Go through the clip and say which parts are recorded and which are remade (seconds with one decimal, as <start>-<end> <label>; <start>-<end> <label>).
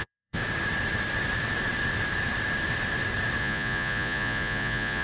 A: 0.0-0.4 remade; 0.4-3.4 recorded; 3.4-5.0 remade